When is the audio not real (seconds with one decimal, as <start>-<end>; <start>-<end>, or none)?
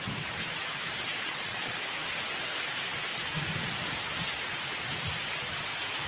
1.1-1.8